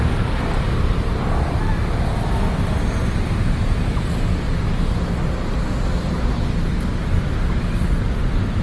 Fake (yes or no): no